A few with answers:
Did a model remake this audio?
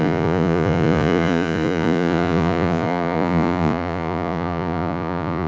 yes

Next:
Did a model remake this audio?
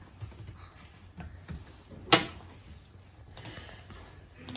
no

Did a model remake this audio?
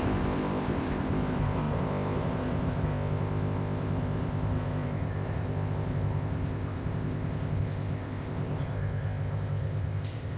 yes